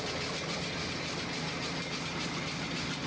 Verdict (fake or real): real